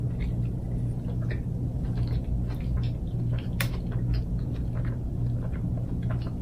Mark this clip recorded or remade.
recorded